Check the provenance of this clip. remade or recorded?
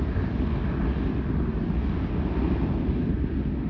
recorded